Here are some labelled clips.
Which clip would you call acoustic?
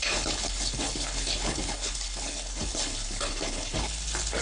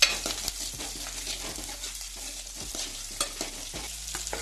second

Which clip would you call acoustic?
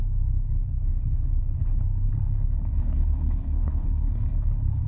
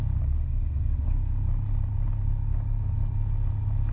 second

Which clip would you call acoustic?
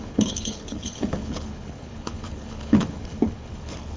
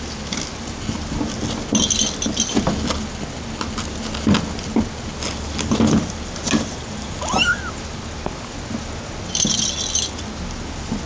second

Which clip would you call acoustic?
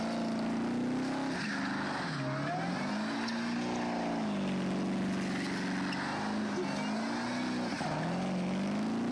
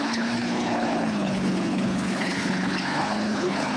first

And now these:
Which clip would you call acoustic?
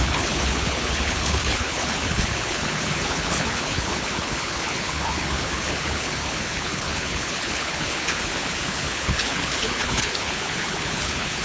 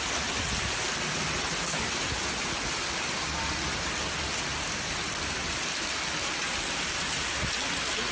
second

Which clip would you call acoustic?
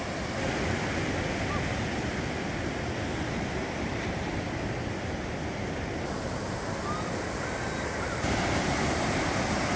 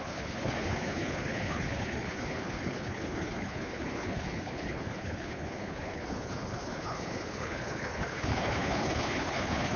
first